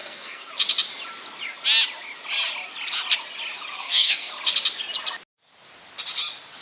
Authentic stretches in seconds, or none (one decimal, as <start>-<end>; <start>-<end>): 0.5-3.7; 4.3-6.6